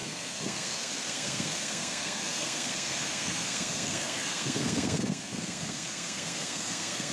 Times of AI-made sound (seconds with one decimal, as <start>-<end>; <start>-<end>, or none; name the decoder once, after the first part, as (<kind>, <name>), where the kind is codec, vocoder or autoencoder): 0.0-7.1 (codec, SNAC)